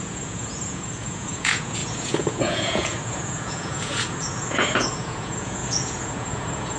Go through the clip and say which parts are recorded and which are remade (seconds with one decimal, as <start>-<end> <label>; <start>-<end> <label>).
0.0-6.8 remade

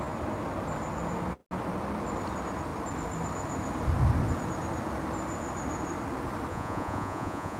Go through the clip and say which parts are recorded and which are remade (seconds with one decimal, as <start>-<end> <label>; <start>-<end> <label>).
0.0-6.5 recorded; 6.5-7.6 remade

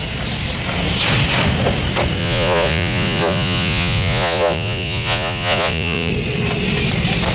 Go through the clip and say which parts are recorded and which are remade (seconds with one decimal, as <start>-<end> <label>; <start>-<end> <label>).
0.0-2.2 recorded; 2.2-6.1 remade; 6.1-7.3 recorded